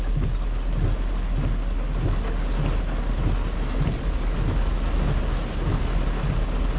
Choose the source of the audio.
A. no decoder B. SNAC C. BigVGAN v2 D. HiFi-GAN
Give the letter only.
A